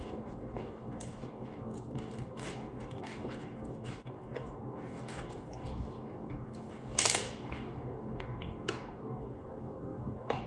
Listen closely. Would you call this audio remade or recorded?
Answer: remade